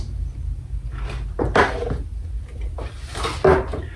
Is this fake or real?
real